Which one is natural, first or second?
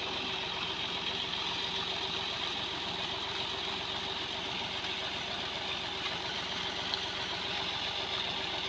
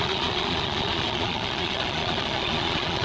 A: first